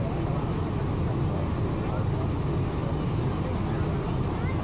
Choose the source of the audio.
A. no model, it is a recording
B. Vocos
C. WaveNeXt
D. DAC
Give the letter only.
A